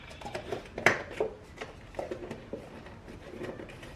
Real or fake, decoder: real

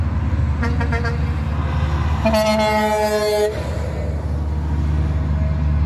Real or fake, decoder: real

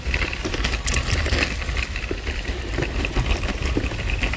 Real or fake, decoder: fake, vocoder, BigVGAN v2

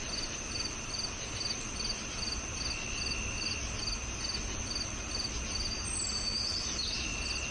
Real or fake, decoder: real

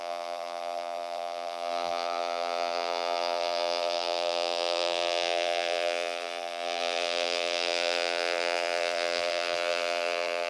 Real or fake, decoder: fake, vocoder, BigVGAN v2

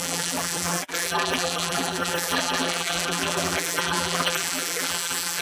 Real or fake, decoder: fake, vocoder, BigVGAN v2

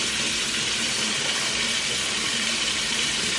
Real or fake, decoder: fake, vocoder, BigVGAN v2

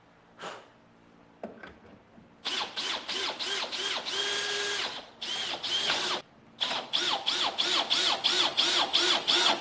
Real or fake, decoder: real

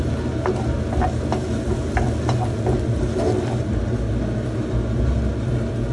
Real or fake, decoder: real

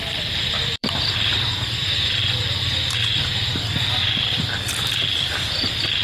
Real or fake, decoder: fake, vocoder, BigVGAN v2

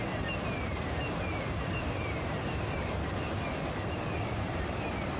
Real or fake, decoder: fake, vocoder, BigVGAN v2